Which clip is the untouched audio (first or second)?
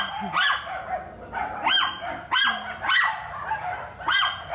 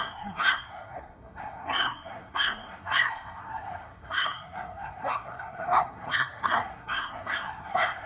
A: first